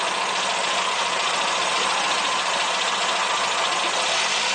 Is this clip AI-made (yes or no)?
no